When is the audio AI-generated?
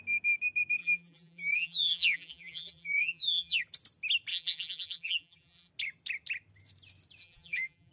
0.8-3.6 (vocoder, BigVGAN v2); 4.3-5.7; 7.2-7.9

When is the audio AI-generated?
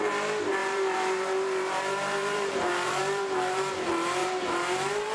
0.6-3.7 (vocoder, BigVGAN v2); 4.2-5.1